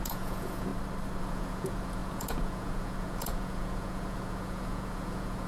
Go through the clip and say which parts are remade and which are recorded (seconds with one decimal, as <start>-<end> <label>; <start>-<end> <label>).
0.0-0.7 remade; 0.7-1.2 recorded; 1.2-5.5 remade